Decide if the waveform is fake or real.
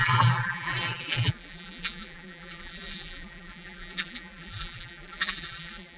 fake